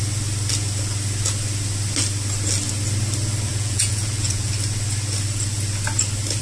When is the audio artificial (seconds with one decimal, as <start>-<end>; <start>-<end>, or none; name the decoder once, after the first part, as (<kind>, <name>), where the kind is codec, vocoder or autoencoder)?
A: 3.5-4.5 (vocoder, Vocos)